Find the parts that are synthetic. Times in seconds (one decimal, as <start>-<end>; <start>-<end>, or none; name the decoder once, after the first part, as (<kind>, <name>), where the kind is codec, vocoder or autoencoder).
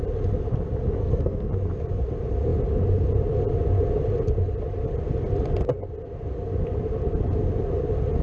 1.0-1.5 (codec, SNAC)